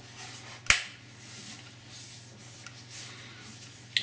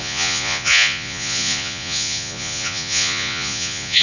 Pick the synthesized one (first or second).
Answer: second